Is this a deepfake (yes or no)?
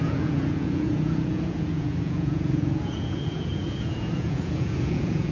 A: yes